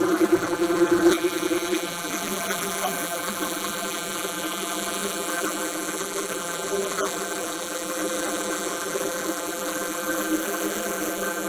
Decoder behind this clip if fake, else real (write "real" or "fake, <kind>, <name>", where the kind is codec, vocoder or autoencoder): fake, vocoder, BigVGAN v2